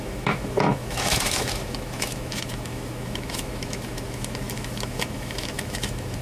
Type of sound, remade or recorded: remade